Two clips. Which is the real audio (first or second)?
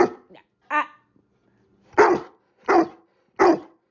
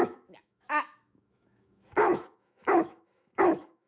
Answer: first